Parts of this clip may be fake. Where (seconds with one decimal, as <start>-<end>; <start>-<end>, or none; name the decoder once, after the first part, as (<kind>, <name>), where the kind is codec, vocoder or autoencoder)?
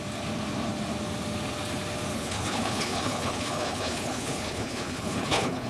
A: 2.1-5.7 (codec, HILCodec)